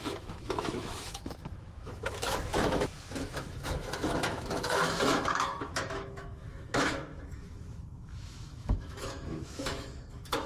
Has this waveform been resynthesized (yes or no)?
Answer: yes